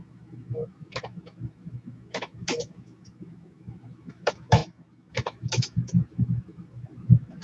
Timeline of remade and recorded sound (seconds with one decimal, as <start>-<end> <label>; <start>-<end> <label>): 0.0-7.4 remade

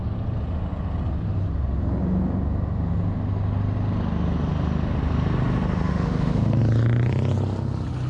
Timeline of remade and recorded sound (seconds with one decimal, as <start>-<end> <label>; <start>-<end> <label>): 0.0-5.9 recorded; 5.9-6.6 remade; 6.6-8.1 recorded